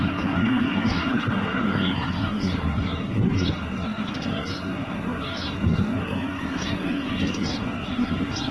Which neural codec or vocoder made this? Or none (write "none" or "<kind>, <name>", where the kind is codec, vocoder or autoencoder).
codec, SNAC